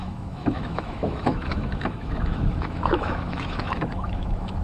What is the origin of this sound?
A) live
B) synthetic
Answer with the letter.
B